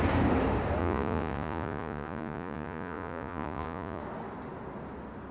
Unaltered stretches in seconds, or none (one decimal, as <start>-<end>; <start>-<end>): 0.0-0.8; 4.0-5.3